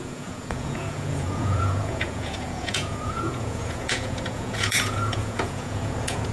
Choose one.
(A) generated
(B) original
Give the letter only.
A